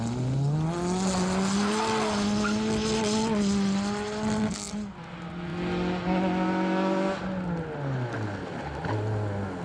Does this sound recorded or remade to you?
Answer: recorded